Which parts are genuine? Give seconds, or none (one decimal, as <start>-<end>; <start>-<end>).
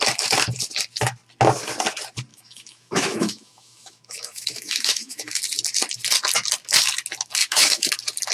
0.0-2.3; 5.4-7.4; 7.9-8.3